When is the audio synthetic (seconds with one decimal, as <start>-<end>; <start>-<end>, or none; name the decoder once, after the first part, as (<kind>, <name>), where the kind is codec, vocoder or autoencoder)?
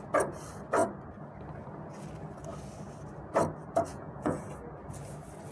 3.9-4.4 (vocoder, Vocos)